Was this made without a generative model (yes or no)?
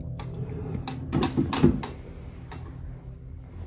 yes